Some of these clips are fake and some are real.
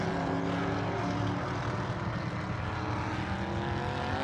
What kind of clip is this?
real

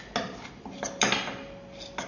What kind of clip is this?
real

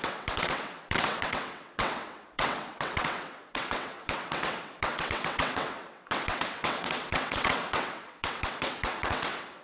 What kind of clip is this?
fake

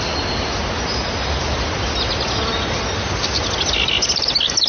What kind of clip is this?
real